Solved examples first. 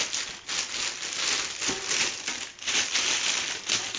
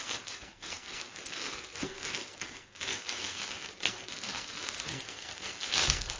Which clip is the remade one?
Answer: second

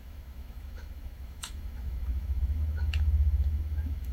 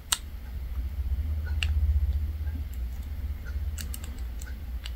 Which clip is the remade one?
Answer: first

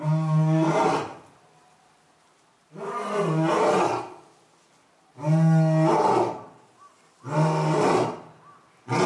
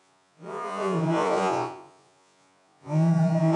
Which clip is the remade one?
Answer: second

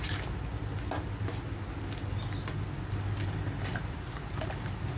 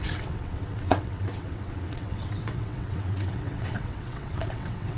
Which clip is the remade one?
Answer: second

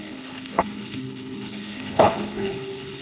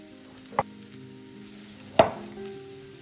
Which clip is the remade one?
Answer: first